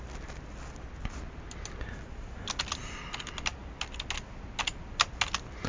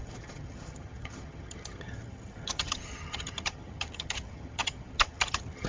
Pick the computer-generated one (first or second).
second